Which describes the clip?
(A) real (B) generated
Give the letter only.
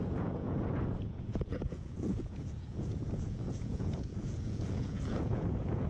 B